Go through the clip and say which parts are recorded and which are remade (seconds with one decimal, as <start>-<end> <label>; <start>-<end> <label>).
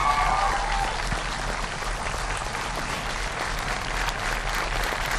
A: 0.0-5.2 recorded